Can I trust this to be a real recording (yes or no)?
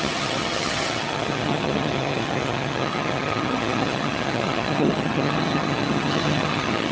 no